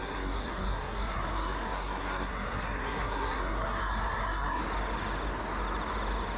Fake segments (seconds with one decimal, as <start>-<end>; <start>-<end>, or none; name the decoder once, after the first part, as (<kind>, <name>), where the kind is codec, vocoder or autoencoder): 0.0-4.6 (codec, SNAC)